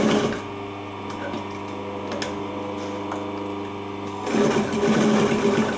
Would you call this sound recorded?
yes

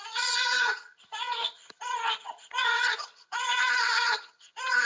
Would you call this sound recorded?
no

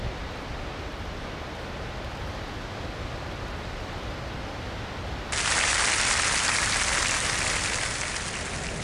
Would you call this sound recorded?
yes